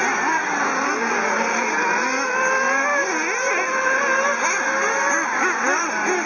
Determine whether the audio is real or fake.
real